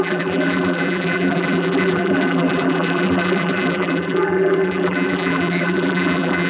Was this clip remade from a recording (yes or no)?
yes